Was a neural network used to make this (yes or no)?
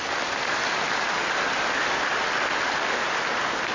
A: no